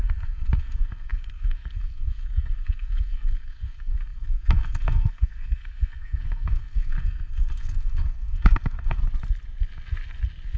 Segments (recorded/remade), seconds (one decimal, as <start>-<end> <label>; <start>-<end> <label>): 0.0-9.0 remade; 9.0-10.6 recorded